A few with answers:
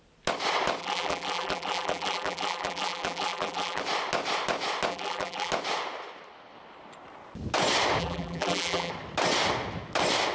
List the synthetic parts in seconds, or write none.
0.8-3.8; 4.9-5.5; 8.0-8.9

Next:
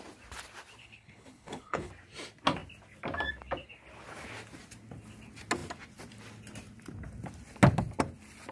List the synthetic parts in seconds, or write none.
0.8-1.9

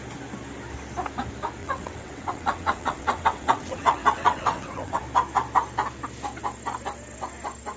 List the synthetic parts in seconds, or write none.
1.6-5.0

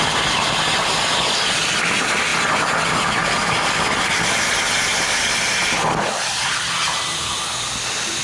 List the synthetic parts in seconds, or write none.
none

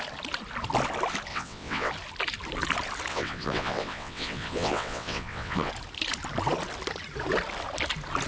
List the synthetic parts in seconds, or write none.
1.3-1.9; 3.1-5.7

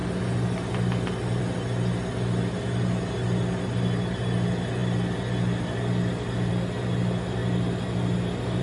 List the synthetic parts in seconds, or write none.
none

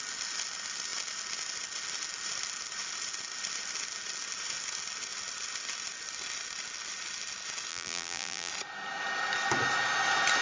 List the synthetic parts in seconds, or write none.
7.7-8.5

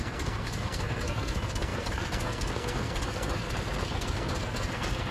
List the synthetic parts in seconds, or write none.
0.0-5.1